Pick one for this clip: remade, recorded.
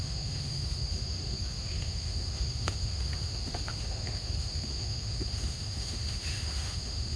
remade